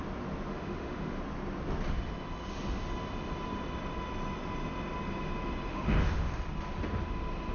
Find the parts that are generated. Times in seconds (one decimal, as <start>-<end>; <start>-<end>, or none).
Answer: 0.5-1.2; 5.7-6.3